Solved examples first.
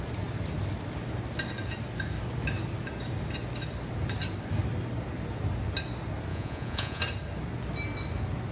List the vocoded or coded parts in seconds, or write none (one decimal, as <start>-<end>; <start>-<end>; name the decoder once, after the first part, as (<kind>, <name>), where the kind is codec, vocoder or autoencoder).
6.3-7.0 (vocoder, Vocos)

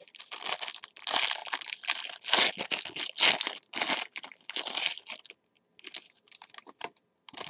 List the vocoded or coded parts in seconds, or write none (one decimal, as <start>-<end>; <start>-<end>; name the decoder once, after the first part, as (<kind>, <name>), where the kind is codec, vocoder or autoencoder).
none

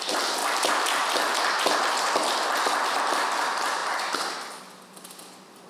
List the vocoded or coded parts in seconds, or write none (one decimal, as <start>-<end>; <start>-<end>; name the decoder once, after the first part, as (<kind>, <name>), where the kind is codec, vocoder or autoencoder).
none

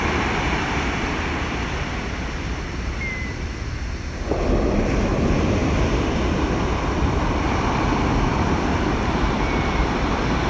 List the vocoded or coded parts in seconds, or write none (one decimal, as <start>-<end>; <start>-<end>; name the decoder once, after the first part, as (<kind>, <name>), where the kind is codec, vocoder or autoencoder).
none

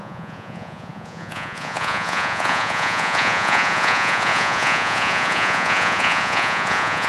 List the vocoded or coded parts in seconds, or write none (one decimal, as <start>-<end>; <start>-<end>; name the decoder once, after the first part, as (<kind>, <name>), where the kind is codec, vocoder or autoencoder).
0.0-7.1 (vocoder, Vocos)

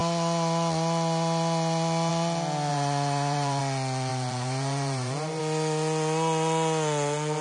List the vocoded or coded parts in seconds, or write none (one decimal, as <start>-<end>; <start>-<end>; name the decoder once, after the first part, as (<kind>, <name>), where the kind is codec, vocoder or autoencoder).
2.7-3.6 (vocoder, BigVGAN v2); 4.1-5.4